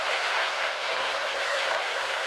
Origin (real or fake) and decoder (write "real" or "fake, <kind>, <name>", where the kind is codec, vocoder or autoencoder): fake, codec, SNAC